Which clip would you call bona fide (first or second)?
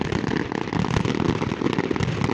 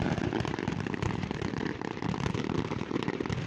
first